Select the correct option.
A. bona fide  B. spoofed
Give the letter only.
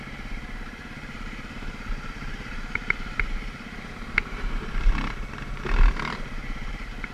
B